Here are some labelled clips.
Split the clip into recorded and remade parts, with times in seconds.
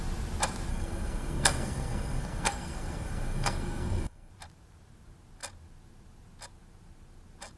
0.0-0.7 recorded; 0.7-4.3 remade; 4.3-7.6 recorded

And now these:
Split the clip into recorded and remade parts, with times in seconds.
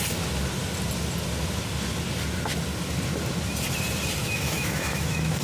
0.0-4.2 recorded; 4.2-5.4 remade